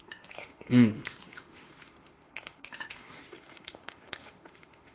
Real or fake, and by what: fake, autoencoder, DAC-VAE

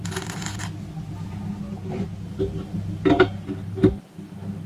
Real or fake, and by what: real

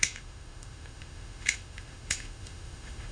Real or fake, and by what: fake, autoencoder, DAC-VAE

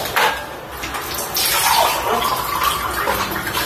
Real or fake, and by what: real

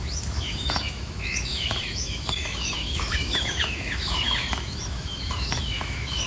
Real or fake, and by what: fake, autoencoder, DAC-VAE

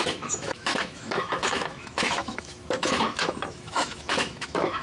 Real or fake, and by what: fake, autoencoder, DAC-VAE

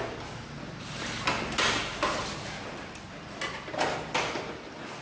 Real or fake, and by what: real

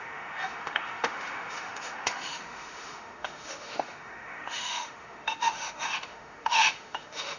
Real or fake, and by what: fake, autoencoder, DAC-VAE